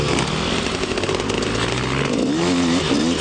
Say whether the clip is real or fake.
real